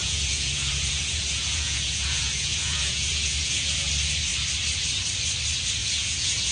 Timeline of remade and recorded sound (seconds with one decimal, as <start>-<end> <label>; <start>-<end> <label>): 0.0-3.9 remade; 3.9-5.8 recorded; 5.8-6.5 remade